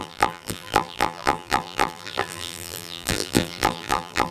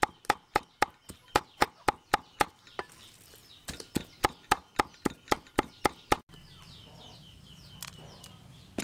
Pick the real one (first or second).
second